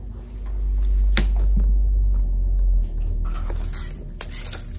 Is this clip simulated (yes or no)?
no